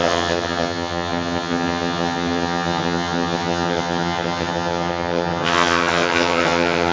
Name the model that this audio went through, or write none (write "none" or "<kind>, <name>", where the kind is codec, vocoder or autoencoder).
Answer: vocoder, HiFi-GAN